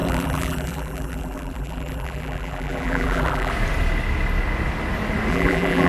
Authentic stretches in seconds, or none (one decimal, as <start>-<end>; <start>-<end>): 3.5-5.3